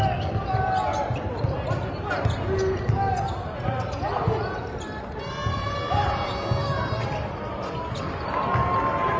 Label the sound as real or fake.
real